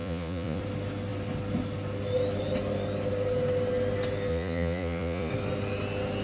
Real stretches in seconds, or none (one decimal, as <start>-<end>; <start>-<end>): 0.6-4.3; 5.3-6.2